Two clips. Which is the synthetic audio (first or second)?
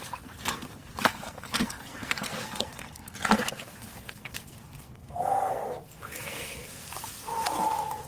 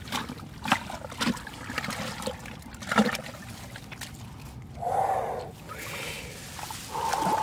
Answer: first